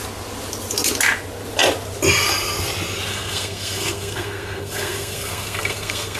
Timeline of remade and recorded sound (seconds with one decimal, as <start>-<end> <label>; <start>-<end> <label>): 0.0-3.1 recorded; 3.1-6.2 remade